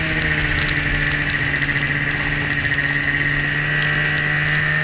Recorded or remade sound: recorded